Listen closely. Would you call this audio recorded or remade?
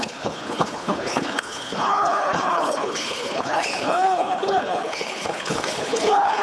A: remade